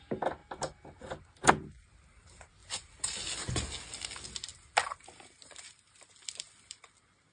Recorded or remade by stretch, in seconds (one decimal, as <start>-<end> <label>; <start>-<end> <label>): 0.0-0.4 recorded; 0.4-1.5 remade; 1.5-2.6 recorded; 2.6-3.5 remade; 3.5-4.5 recorded; 4.5-7.3 remade